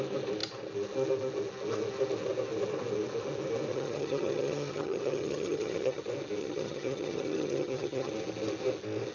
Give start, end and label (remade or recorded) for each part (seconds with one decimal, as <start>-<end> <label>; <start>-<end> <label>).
0.0-3.7 recorded; 3.7-6.0 remade; 6.0-6.4 recorded; 6.4-8.1 remade; 8.1-9.1 recorded